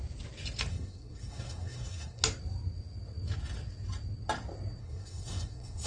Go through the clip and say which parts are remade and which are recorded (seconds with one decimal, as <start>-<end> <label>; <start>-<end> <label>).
0.0-0.7 recorded; 0.7-2.2 remade; 2.2-4.8 recorded; 4.8-5.9 remade